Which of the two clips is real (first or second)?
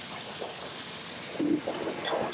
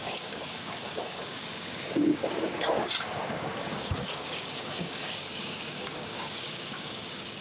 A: first